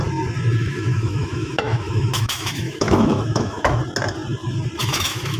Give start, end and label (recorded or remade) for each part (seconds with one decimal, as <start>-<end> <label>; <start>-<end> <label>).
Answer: 0.0-0.6 recorded; 0.6-3.8 remade; 3.8-4.8 recorded; 4.8-5.4 remade